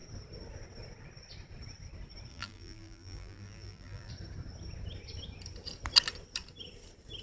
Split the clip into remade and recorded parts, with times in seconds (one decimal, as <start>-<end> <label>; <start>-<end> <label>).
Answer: 0.0-2.3 recorded; 2.3-4.1 remade; 4.1-7.2 recorded